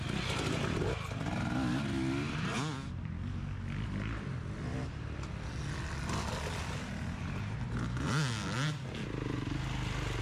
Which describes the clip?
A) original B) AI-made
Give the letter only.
A